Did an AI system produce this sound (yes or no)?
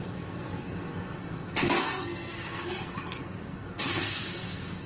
yes